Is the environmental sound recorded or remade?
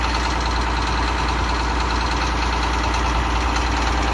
recorded